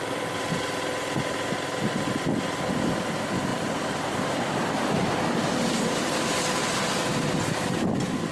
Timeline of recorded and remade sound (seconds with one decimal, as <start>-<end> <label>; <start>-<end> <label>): 0.0-8.3 remade